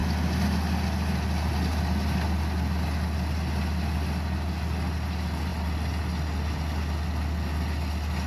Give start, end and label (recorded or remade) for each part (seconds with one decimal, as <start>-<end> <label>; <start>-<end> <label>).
0.0-8.3 recorded